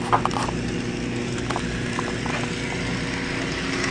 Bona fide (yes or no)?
yes